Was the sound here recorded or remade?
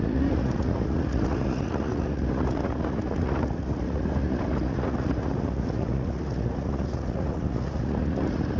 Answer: remade